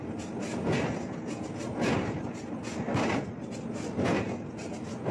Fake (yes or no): no